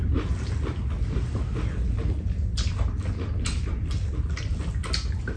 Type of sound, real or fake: real